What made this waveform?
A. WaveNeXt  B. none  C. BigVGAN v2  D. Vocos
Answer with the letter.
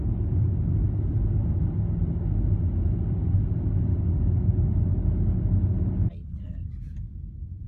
B